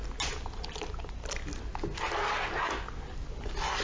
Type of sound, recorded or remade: recorded